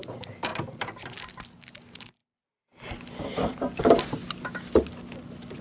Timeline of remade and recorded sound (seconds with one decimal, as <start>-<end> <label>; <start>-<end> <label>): 0.0-5.6 recorded